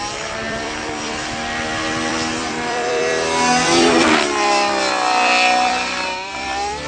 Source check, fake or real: fake